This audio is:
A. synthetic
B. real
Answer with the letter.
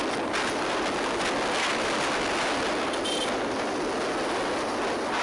B